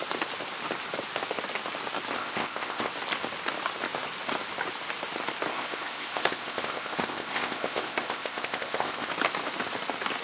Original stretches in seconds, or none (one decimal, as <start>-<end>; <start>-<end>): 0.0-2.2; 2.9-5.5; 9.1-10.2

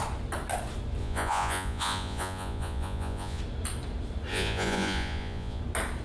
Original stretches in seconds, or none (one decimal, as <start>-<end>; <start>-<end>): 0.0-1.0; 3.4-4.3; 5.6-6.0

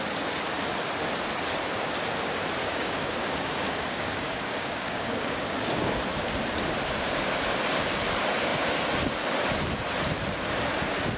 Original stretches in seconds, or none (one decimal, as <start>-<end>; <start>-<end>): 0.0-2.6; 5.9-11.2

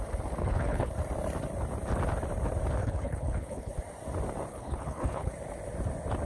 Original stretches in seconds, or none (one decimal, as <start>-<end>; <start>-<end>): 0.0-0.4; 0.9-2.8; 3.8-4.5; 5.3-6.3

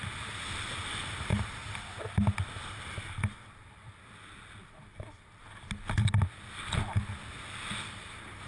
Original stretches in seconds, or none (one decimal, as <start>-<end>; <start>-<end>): 0.0-8.5